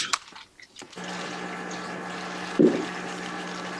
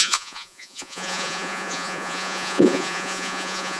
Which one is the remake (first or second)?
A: second